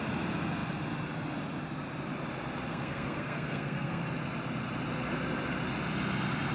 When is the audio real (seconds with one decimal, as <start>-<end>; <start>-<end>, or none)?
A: 0.0-2.7; 4.0-6.5